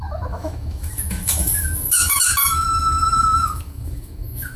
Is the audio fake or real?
fake